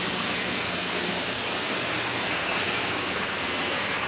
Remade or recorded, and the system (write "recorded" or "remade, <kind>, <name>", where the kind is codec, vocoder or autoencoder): remade, codec, SNAC